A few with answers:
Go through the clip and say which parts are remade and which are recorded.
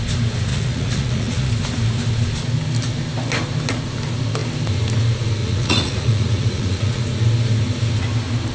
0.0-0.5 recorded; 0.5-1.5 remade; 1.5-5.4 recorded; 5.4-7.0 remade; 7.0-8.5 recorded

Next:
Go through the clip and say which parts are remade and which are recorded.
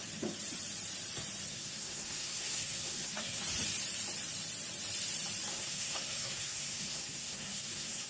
0.0-1.5 recorded; 1.5-3.4 remade; 3.4-5.5 recorded; 5.5-8.1 remade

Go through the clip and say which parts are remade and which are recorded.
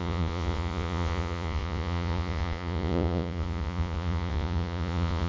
0.0-5.3 remade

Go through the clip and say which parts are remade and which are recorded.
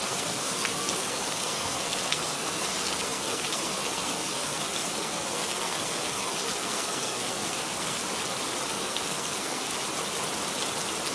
0.0-8.0 remade; 8.0-8.7 recorded; 8.7-9.7 remade; 9.7-11.1 recorded